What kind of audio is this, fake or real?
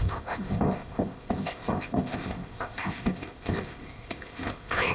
fake